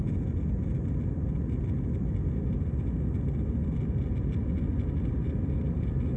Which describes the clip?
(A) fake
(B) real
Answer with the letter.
B